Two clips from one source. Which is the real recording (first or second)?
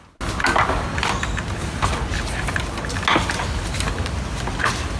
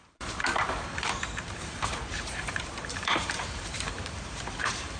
first